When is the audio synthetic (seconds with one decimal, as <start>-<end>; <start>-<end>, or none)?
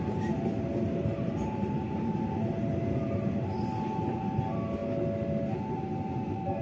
0.0-4.8; 5.7-6.6